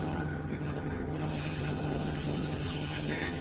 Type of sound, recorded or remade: remade